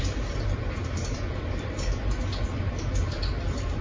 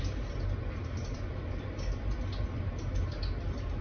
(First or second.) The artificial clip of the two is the first